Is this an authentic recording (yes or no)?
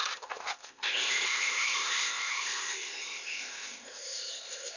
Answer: no